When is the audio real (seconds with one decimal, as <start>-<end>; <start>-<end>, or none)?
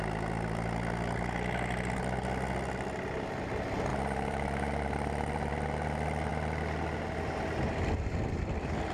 0.0-3.9; 5.5-8.9